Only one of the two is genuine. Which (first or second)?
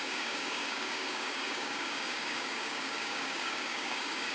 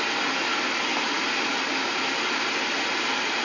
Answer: second